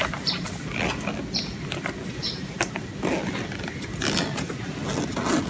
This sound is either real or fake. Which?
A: real